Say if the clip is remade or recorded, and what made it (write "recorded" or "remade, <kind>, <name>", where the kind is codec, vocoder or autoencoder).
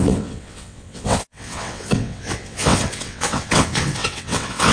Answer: remade, vocoder, WaveNeXt